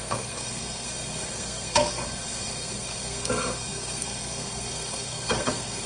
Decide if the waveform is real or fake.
fake